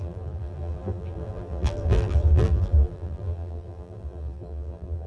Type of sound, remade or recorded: remade